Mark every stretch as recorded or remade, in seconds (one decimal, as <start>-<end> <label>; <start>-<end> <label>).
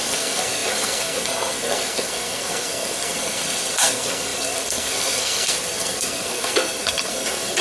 0.0-7.6 remade